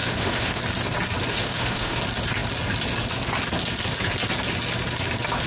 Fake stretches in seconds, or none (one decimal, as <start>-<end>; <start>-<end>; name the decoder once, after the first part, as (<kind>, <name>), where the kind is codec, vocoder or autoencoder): 0.0-0.6 (autoencoder, DAC-VAE); 1.3-2.0